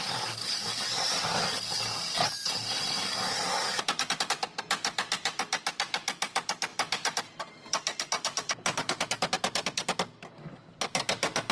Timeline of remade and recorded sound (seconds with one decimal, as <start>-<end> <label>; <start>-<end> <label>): 0.0-11.5 recorded